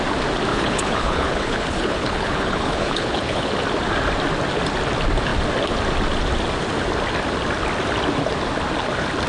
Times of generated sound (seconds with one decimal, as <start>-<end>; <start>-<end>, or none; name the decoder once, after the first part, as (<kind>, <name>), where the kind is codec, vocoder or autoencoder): 0.5-3.5 (codec, HILCodec)